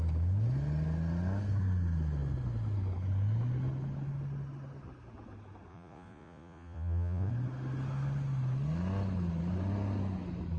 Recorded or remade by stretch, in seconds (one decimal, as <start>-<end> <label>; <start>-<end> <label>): 0.0-5.7 recorded; 5.7-7.3 remade; 7.3-10.6 recorded